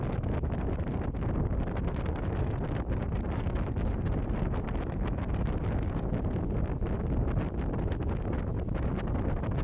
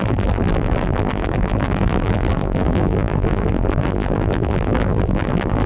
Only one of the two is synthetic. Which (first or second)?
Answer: second